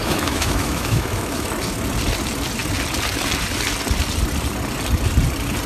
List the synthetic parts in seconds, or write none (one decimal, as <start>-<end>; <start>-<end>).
0.0-1.5